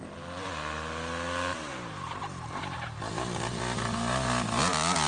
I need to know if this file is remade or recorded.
recorded